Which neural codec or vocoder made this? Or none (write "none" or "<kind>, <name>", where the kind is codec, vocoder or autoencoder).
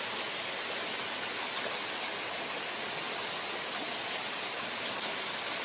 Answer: none